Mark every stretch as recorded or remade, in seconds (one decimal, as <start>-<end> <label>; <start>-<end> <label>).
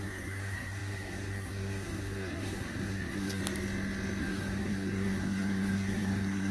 0.0-3.4 remade; 3.4-4.2 recorded; 4.2-6.5 remade